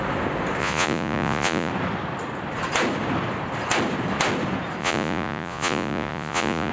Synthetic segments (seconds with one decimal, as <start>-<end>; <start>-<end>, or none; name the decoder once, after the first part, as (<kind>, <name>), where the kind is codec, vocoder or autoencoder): 0.6-1.7 (vocoder, Vocos); 4.8-6.7